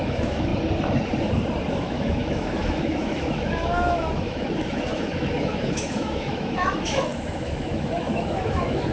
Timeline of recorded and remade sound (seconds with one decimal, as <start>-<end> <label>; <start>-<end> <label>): 0.0-0.5 remade; 0.5-1.7 recorded; 1.7-8.9 remade